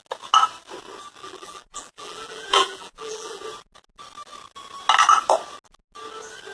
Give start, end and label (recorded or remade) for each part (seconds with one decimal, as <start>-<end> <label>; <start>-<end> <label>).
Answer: 0.0-1.2 recorded; 1.2-3.4 remade; 3.4-6.5 recorded